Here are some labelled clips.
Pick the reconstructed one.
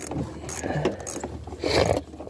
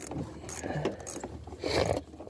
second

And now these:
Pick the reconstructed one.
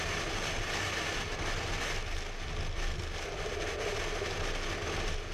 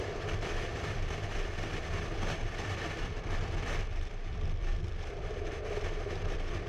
second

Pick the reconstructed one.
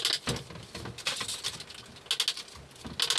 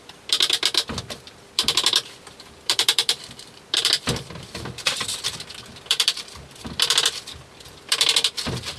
second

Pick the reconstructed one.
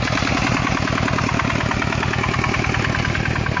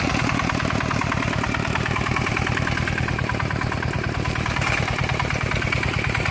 second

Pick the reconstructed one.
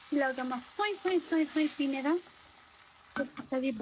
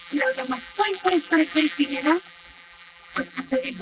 second